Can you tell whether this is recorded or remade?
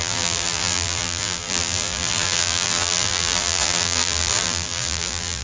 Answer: remade